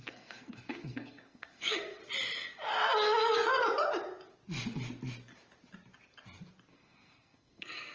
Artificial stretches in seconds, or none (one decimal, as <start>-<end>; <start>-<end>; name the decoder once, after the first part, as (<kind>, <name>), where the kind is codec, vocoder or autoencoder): 0.0-2.0 (codec, SNAC); 6.7-7.9